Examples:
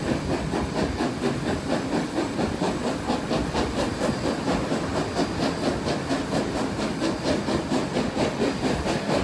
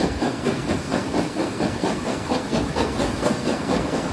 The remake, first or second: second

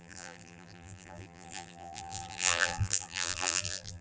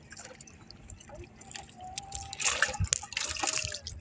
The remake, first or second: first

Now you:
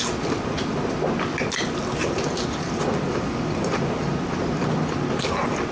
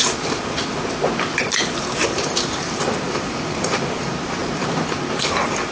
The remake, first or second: second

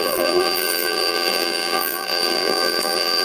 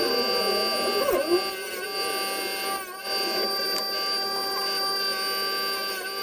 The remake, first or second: first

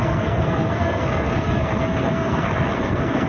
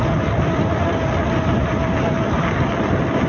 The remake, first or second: first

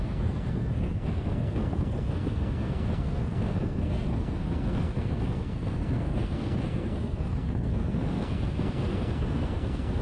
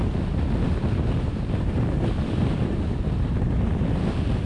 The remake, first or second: first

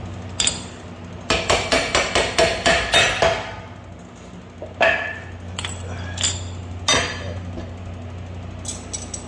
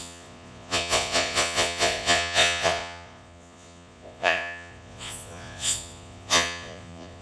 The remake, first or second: second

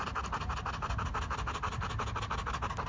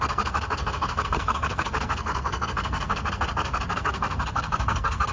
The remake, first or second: second